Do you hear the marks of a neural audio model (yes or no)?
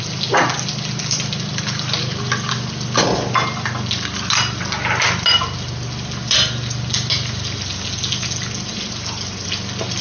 no